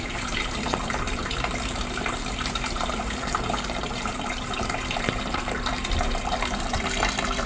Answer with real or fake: fake